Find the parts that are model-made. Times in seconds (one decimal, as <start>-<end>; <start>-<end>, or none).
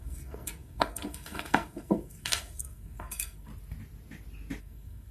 0.0-3.5; 4.6-5.1